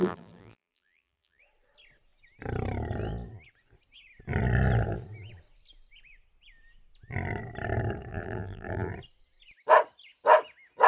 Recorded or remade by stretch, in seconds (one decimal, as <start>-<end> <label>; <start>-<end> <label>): 0.0-1.4 remade; 1.4-8.1 recorded; 8.1-8.9 remade; 8.9-10.9 recorded